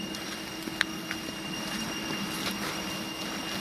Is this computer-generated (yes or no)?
no